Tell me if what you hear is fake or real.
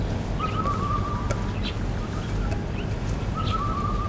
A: real